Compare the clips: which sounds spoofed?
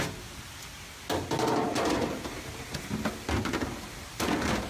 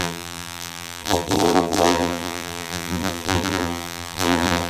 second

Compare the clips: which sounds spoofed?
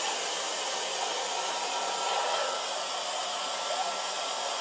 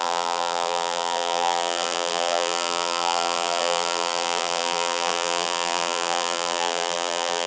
second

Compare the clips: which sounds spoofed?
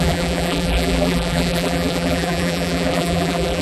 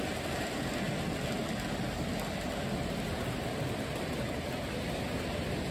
first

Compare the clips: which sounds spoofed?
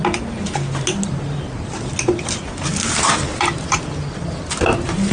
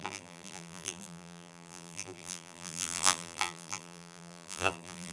second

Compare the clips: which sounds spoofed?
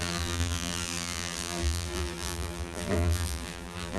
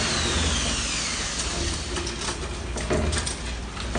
first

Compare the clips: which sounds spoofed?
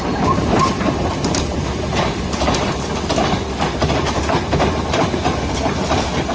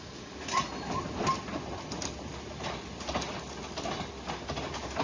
first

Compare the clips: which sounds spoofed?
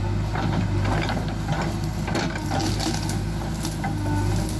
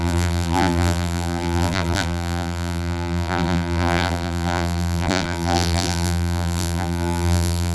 second